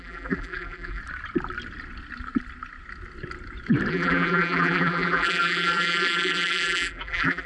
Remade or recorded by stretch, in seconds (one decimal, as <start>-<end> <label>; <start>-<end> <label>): 0.0-1.0 remade; 1.0-3.9 recorded; 3.9-7.5 remade